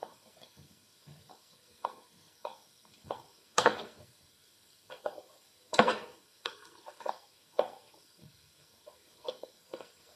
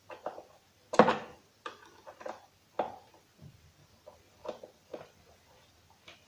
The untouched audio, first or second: second